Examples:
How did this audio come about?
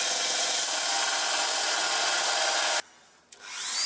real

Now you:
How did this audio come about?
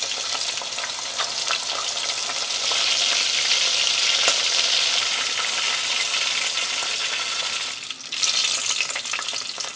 real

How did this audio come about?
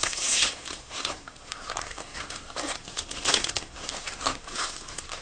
fake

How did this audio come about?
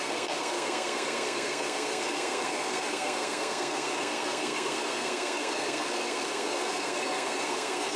fake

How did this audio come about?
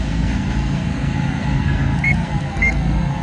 fake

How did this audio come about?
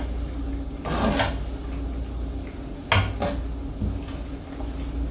real